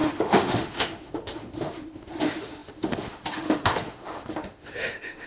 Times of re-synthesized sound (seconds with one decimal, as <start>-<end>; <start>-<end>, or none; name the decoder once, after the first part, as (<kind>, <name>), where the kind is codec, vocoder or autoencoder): 0.0-5.3 (autoencoder, DAC-VAE)